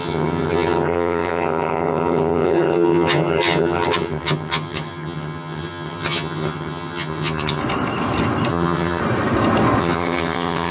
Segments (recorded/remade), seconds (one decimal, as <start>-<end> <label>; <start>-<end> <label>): 0.0-7.6 remade; 7.6-8.5 recorded; 8.5-9.0 remade; 9.0-9.8 recorded; 9.8-10.7 remade